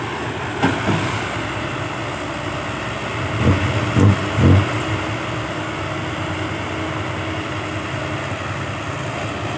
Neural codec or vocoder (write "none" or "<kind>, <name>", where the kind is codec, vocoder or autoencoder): none